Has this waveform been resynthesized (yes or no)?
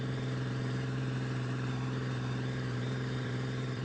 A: yes